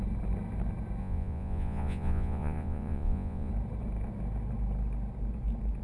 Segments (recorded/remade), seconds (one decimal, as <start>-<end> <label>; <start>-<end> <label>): 0.0-1.0 recorded; 1.0-3.5 remade; 3.5-5.8 recorded